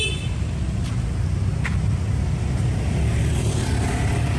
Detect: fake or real real